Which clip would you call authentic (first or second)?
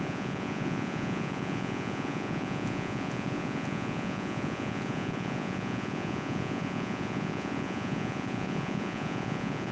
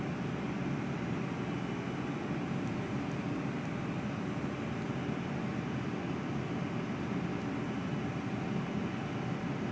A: second